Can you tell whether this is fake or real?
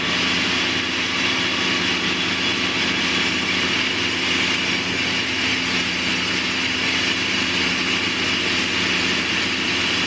real